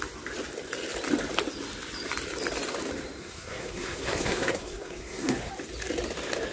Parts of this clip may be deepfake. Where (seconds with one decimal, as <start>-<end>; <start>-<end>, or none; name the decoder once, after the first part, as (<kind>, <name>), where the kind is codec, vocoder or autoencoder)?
3.2-5.5 (codec, SNAC)